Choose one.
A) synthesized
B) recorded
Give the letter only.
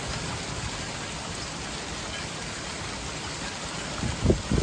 B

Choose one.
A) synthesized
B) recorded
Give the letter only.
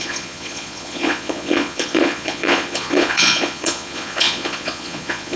A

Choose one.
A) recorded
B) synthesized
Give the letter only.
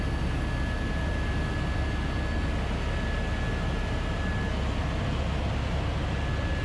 A